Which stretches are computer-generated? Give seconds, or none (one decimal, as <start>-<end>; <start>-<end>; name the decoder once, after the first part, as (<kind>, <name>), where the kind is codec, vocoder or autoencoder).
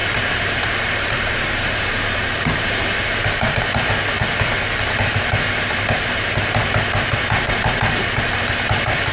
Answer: 0.0-3.9 (vocoder, BigVGAN v2)